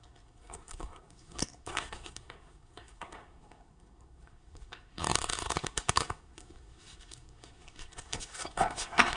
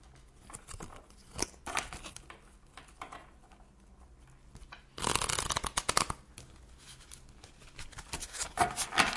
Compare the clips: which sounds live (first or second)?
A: second